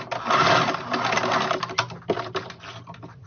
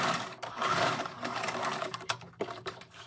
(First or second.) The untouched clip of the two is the first